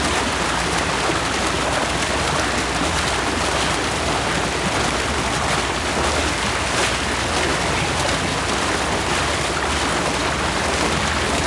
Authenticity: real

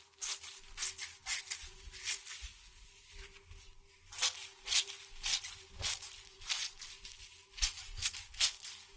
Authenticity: real